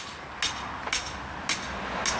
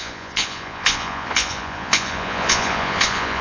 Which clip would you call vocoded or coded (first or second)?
second